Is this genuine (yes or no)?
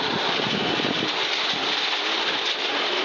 no